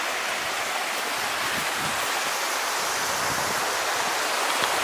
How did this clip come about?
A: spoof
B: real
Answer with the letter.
B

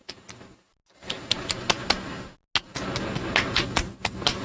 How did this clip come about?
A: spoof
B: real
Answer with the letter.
B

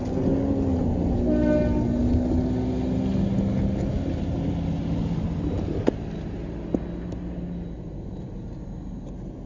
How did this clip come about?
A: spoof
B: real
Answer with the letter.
B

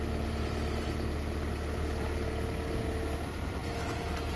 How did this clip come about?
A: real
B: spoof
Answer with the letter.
A